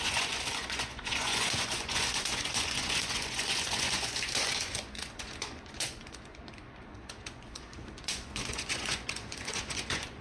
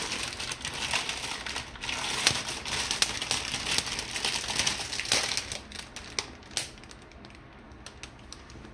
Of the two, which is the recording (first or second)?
second